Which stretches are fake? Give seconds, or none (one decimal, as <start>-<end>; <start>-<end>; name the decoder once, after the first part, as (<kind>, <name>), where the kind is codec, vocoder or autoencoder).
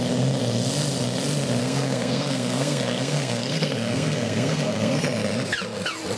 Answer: 1.6-5.0 (codec, SNAC)